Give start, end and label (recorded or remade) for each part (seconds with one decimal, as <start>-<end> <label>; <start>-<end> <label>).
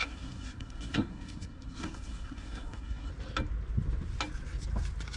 0.0-3.1 remade; 3.1-5.2 recorded